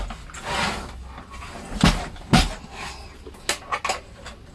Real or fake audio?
real